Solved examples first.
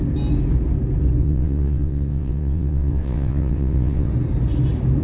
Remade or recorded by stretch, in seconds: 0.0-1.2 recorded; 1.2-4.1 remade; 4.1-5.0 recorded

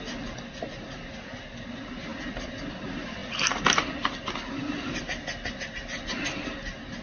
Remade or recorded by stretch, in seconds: 0.0-7.0 recorded

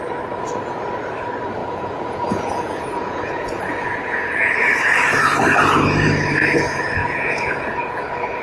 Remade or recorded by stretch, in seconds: 0.0-1.6 recorded; 1.6-4.5 remade; 4.5-7.0 recorded; 7.0-8.0 remade; 8.0-8.4 recorded

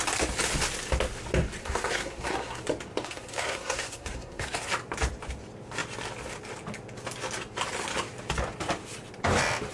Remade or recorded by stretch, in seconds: 0.0-1.6 recorded; 1.6-2.6 remade; 2.6-3.0 recorded; 3.0-4.7 remade; 4.7-9.7 recorded

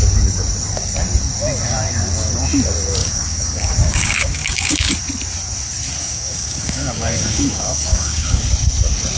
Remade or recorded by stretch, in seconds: 0.0-3.0 recorded; 3.0-4.9 remade; 4.9-6.0 recorded; 6.0-8.4 remade; 8.4-9.2 recorded

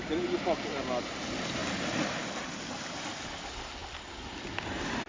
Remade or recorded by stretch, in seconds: 0.0-5.1 recorded